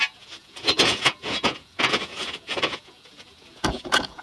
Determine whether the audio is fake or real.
fake